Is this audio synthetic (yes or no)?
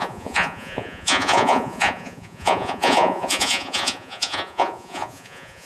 yes